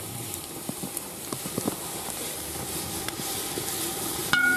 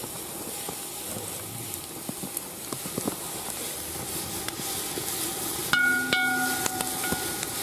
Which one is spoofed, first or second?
first